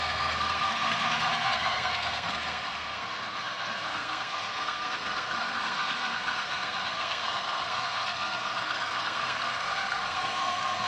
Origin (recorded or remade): remade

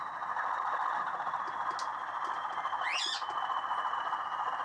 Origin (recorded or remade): recorded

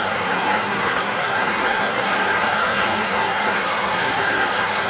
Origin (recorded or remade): remade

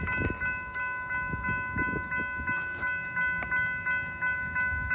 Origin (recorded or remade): recorded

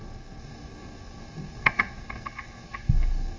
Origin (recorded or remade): remade